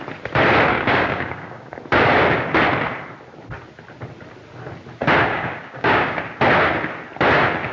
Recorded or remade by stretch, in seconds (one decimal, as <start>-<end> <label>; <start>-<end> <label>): 0.0-0.7 recorded; 0.7-1.7 remade; 1.7-5.3 recorded; 5.3-6.2 remade; 6.2-7.7 recorded